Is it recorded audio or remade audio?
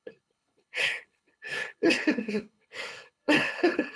remade